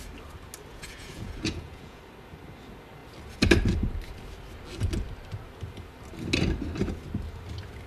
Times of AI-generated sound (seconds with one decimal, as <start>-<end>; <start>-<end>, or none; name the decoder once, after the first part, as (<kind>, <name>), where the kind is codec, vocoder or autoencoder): 0.7-2.0 (vocoder, Vocos)